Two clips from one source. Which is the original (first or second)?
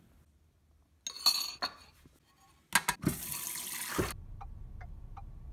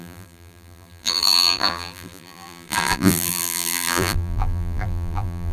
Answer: first